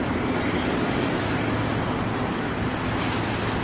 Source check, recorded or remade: recorded